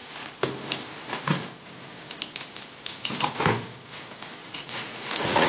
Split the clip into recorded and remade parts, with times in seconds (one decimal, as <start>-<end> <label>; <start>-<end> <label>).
0.0-4.4 recorded; 4.4-5.5 remade